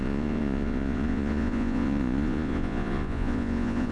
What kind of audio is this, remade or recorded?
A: remade